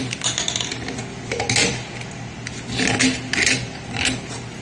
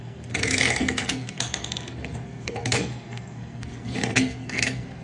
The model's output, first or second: second